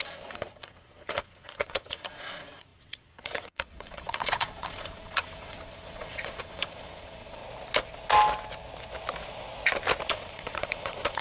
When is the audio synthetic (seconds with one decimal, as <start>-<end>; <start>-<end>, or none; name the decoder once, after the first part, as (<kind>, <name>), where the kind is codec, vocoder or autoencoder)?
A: 0.0-7.4 (vocoder, Vocos); 10.1-11.2